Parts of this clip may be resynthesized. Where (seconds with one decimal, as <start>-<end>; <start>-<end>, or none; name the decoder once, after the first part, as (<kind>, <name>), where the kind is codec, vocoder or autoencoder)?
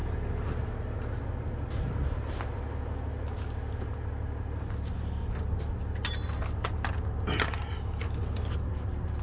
none